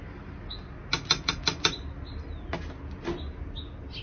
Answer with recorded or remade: recorded